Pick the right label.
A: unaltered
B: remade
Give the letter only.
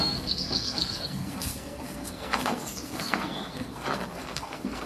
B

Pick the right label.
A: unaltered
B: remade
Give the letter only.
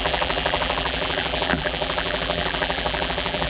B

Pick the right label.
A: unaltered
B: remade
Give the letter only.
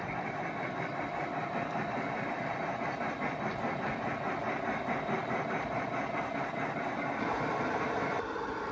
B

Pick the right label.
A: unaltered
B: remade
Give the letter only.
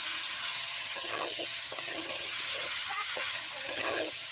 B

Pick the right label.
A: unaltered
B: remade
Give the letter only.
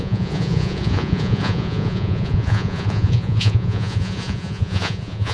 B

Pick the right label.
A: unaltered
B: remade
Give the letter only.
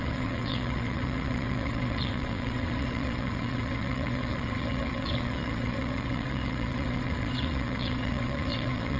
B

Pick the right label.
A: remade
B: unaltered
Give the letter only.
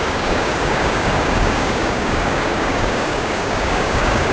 A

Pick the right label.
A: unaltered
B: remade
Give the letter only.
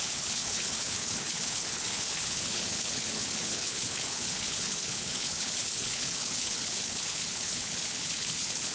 B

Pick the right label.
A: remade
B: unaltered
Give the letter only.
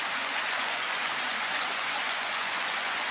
A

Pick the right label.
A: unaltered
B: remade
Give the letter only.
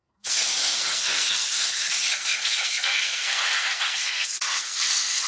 B